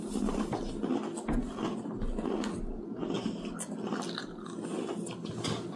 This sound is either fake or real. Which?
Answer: real